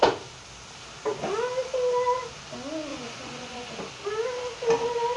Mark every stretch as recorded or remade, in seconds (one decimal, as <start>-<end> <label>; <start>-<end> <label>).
0.0-2.9 recorded; 2.9-3.8 remade; 3.8-5.2 recorded